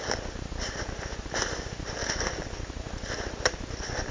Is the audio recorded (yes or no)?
yes